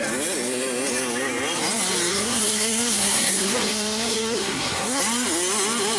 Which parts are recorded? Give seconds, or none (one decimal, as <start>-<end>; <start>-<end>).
0.0-2.1; 5.0-6.0